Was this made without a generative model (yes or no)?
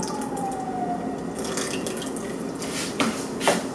yes